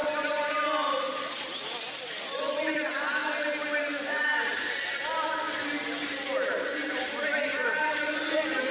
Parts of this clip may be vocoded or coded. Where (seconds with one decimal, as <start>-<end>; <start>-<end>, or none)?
1.8-3.2; 7.9-8.7

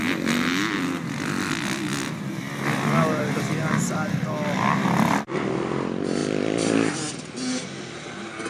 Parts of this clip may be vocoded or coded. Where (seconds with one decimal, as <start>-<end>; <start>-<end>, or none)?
none